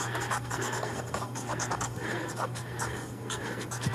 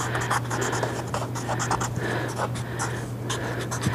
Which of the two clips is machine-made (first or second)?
first